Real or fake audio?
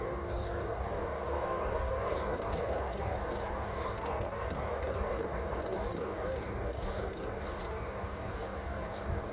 fake